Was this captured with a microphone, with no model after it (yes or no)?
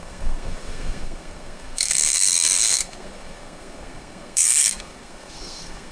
no